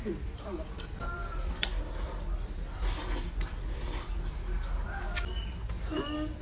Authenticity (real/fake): real